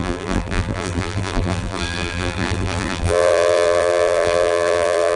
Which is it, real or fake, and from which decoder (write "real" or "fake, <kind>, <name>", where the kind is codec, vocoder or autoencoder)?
fake, vocoder, BigVGAN v2